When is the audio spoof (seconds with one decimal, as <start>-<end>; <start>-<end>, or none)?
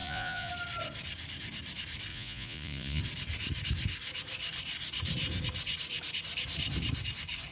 0.0-0.5; 2.1-3.0